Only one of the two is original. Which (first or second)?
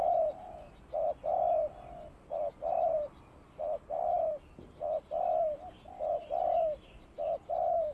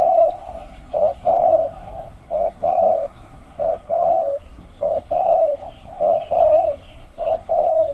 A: first